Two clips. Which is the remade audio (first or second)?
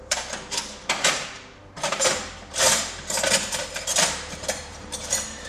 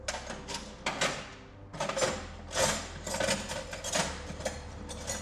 first